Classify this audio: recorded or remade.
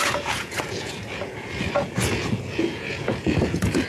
remade